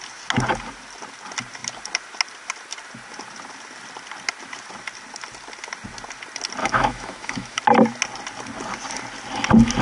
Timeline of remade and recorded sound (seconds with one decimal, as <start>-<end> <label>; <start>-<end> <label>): 0.0-6.6 recorded; 6.6-7.6 remade; 7.6-9.8 recorded